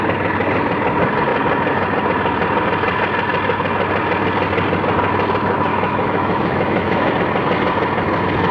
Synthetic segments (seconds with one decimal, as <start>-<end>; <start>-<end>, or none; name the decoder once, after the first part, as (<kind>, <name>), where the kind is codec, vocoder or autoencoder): 5.7-7.1 (autoencoder, DAC-VAE)